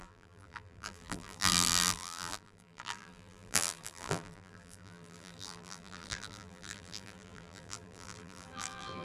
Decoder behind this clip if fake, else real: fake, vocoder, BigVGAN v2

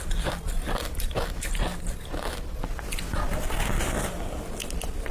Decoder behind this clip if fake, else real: real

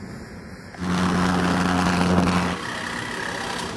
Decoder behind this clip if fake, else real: real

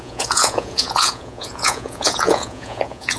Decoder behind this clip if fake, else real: fake, vocoder, Vocos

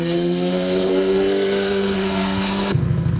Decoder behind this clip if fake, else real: fake, codec, SNAC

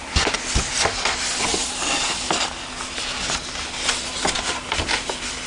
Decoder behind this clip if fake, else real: real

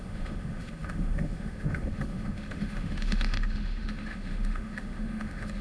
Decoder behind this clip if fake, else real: fake, autoencoder, DAC-VAE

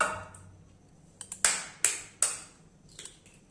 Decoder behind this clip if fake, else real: real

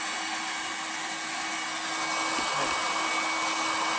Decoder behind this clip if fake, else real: real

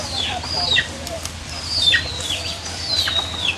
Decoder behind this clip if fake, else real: fake, vocoder, BigVGAN v2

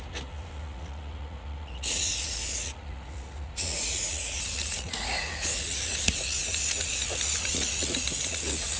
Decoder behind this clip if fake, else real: fake, vocoder, Vocos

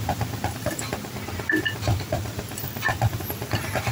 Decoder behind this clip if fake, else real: real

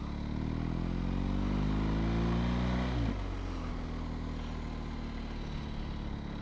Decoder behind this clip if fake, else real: real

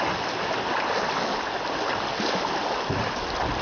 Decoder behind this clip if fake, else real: real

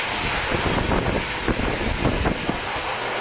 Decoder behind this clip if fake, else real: real